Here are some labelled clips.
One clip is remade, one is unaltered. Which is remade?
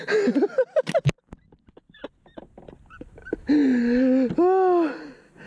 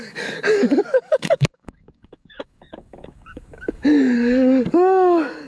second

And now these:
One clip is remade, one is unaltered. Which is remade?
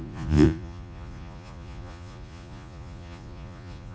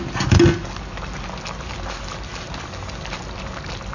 first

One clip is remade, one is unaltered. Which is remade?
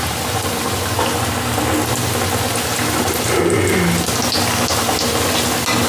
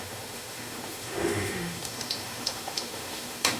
second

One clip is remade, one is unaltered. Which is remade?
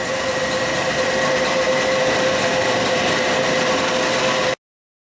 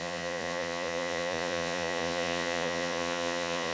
second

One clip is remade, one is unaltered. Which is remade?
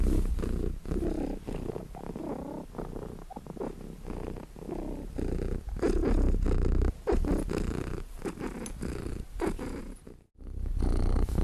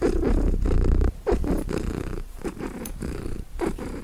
second